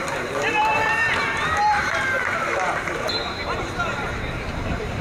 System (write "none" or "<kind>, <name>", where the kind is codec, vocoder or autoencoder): vocoder, BigVGAN v2